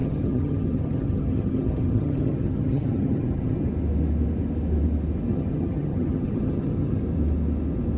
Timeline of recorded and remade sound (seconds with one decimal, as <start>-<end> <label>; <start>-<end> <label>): 0.0-3.7 remade; 3.7-5.3 recorded; 5.3-7.0 remade; 7.0-8.0 recorded